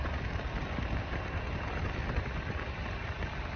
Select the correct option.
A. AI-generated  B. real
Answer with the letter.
B